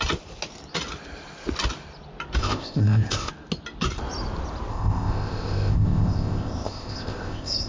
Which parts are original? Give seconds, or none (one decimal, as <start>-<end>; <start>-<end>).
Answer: 0.0-2.4; 3.3-4.7